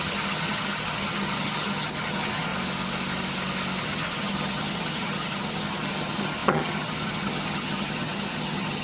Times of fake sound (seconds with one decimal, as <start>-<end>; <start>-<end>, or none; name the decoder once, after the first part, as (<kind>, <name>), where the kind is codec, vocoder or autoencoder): 0.0-2.5 (vocoder, HiFi-GAN); 3.8-8.8